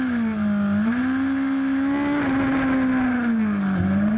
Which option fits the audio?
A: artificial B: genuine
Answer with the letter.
B